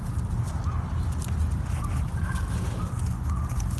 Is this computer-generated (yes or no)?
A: no